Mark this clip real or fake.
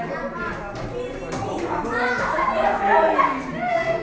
real